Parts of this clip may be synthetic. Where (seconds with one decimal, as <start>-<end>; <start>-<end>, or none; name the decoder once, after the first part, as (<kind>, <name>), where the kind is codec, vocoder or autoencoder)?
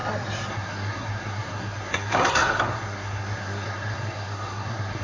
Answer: 0.5-5.0 (codec, SNAC)